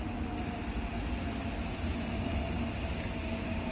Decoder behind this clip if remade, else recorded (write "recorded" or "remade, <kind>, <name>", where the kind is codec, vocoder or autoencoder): recorded